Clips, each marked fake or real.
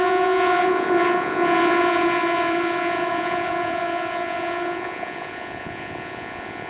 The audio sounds fake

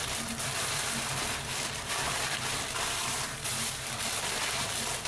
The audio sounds real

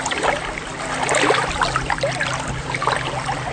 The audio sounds real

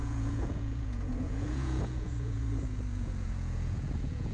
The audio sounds fake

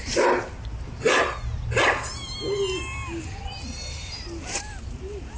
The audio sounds real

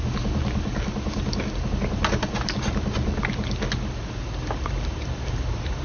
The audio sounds real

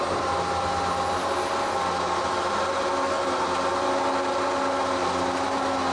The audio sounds real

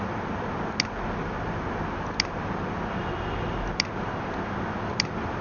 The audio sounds real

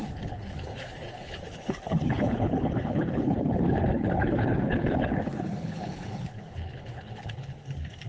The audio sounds fake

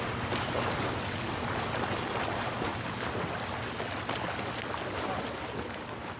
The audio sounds real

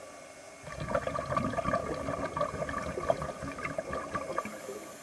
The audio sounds real